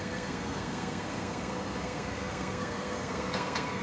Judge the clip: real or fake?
fake